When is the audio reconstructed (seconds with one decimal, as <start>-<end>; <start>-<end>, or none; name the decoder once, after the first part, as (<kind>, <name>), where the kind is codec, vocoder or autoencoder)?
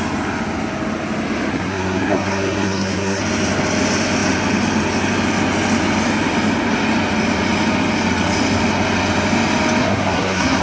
1.5-3.2 (codec, SNAC); 9.8-10.6